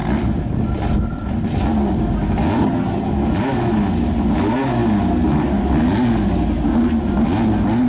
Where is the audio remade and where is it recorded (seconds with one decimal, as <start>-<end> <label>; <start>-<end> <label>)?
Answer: 0.0-2.6 recorded; 2.6-3.1 remade; 3.1-7.9 recorded